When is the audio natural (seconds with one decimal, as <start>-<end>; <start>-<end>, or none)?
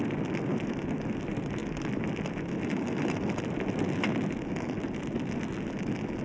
0.0-6.2